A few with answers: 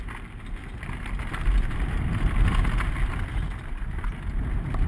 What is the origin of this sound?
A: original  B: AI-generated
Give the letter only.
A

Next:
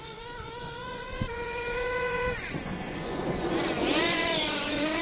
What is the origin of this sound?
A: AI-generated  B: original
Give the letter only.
A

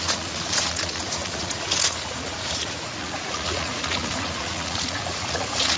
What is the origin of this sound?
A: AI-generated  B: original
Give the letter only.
A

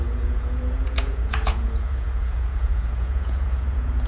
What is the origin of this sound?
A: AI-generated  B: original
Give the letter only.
A